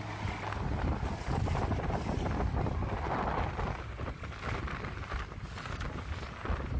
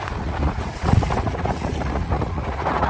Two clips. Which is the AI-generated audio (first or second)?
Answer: second